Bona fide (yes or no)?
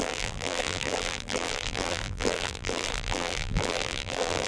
no